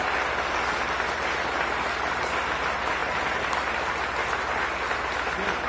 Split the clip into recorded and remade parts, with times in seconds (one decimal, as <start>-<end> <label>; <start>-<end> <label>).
0.0-5.7 recorded